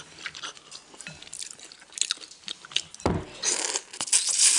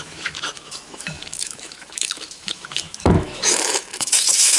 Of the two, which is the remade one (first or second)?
second